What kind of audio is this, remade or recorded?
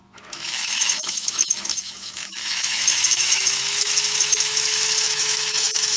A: remade